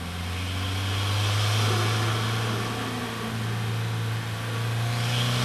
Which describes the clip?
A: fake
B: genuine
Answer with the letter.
B